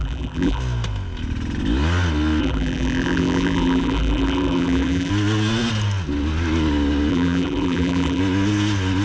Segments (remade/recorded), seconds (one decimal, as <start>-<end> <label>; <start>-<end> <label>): 0.0-0.6 remade; 0.6-2.4 recorded; 2.4-5.1 remade; 5.1-7.1 recorded; 7.1-8.2 remade; 8.2-9.0 recorded